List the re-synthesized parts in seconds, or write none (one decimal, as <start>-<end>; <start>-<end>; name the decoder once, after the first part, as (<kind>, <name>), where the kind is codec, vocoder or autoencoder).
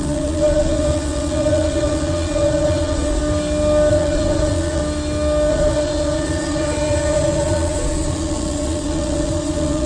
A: 0.0-3.2 (vocoder, Vocos); 3.9-4.8; 5.5-9.9